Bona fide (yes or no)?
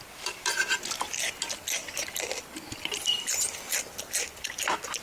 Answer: yes